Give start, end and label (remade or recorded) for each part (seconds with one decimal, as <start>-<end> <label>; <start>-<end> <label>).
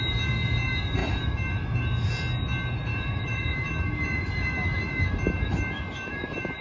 0.0-1.0 recorded; 1.0-1.8 remade; 1.8-2.9 recorded; 2.9-6.6 remade